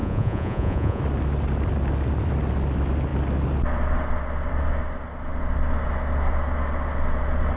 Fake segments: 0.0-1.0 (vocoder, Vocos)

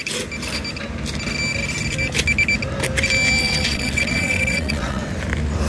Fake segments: 3.4-5.0 (vocoder, WaveNeXt)

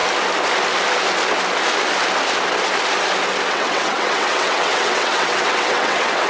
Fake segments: 3.5-6.3 (vocoder, WaveNeXt)

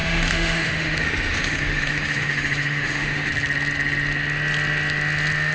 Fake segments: 0.0-3.3 (autoencoder, DAC-VAE)